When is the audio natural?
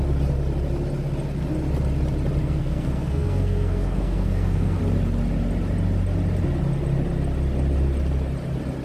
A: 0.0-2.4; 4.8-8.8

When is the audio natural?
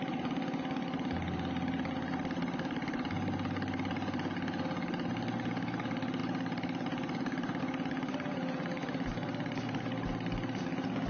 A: 0.0-11.1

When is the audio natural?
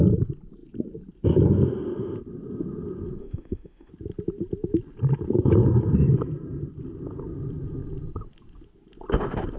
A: 0.0-3.2; 3.9-9.6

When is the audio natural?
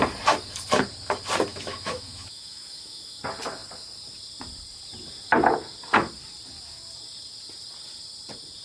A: 0.0-1.5; 3.2-8.6